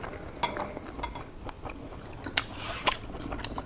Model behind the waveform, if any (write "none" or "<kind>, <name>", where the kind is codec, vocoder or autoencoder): none